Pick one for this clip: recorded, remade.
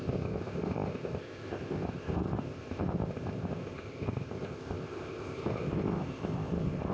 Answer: remade